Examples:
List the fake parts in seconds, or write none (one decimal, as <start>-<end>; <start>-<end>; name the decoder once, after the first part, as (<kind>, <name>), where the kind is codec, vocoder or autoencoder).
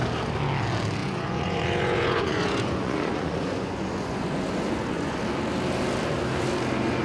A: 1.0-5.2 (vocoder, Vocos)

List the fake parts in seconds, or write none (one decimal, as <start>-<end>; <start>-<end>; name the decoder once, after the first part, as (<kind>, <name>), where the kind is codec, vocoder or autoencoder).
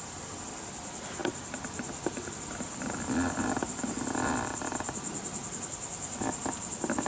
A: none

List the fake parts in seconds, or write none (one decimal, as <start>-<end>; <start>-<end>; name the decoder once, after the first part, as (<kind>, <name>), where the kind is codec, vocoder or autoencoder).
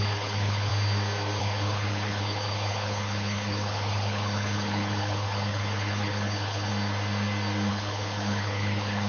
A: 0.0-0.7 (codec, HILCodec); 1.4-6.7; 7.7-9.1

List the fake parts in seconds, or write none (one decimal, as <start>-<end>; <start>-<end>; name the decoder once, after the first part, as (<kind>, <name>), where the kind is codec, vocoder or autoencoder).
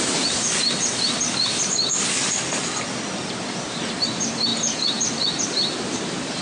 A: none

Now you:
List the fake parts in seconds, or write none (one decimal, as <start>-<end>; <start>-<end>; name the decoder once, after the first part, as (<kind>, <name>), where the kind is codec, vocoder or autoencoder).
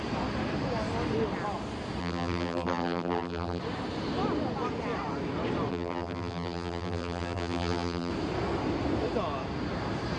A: 2.0-3.6 (vocoder, BigVGAN v2); 5.7-8.1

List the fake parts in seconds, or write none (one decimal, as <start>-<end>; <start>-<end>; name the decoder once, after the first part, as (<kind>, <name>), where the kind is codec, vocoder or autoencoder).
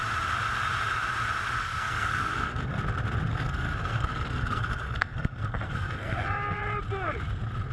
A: 1.6-2.8 (codec, SNAC); 3.3-6.6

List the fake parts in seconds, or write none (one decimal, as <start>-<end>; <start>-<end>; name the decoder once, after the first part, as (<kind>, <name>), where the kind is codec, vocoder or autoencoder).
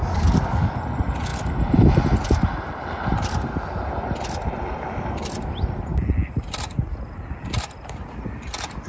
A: 0.0-0.8 (codec, DAC)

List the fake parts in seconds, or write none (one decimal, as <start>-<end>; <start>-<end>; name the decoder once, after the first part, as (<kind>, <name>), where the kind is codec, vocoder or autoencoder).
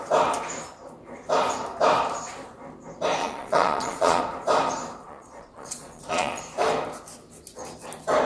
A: 3.2-4.2 (vocoder, Vocos); 5.0-6.4